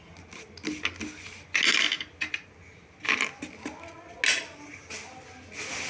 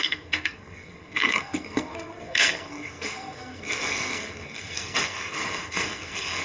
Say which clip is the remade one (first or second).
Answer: second